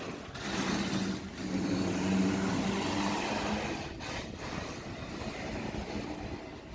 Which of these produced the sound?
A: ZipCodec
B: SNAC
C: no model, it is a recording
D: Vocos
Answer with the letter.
C